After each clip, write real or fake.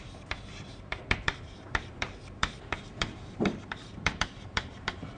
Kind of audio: fake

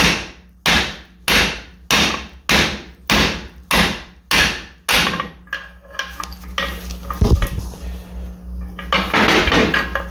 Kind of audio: real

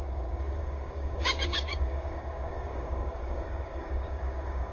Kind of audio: fake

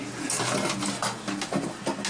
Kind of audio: real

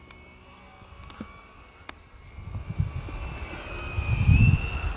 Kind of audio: real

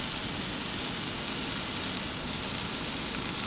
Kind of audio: real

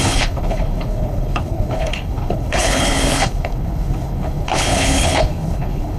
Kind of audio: fake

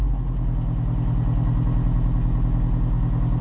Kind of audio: real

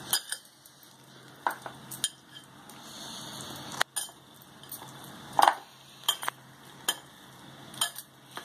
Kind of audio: real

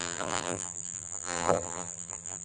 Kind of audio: fake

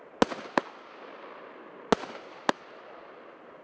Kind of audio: real